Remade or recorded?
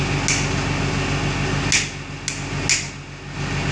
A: recorded